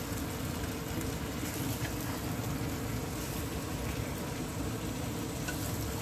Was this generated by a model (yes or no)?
no